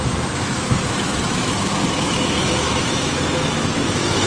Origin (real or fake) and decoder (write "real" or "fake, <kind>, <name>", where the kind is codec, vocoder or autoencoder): fake, autoencoder, DAC-VAE